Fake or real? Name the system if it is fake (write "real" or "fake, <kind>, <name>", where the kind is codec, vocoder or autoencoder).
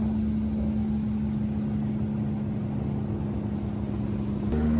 real